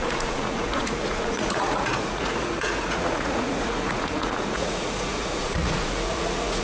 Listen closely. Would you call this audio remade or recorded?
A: remade